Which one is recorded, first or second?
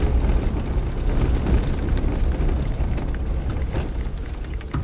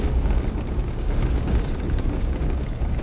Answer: first